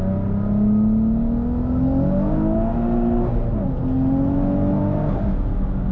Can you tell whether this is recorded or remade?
recorded